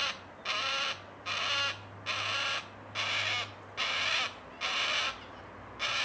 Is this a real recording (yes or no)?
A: yes